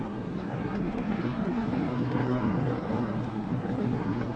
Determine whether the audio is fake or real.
fake